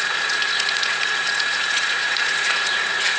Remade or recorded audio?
remade